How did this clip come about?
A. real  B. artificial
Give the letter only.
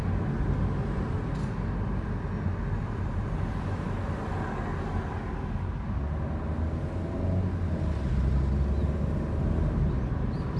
A